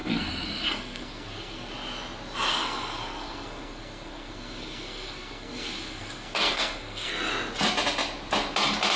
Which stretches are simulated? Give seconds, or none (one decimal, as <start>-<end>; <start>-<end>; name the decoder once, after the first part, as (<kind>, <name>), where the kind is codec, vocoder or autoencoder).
0.0-1.7 (codec, SNAC); 2.5-7.3